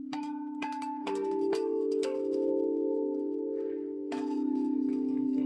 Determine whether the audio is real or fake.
fake